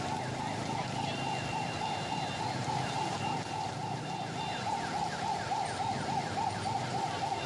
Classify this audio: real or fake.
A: real